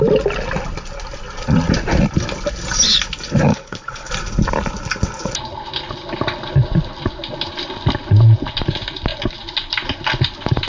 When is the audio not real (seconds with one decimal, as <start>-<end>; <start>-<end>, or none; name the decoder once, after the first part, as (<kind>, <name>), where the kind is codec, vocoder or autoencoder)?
3.5-4.1 (codec, HILCodec)